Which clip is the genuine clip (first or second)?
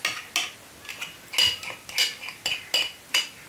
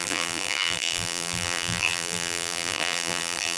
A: first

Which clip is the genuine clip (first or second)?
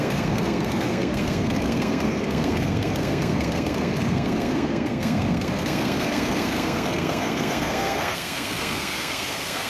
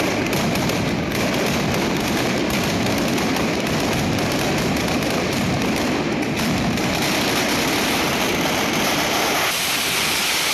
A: second